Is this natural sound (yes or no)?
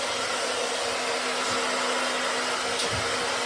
yes